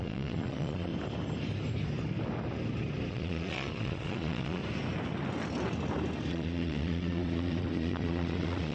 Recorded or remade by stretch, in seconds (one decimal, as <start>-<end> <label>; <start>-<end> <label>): 0.0-0.9 remade; 0.9-3.1 recorded; 3.1-4.6 remade; 4.6-6.3 recorded; 6.3-8.7 remade